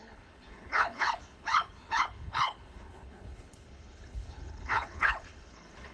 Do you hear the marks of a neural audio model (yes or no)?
yes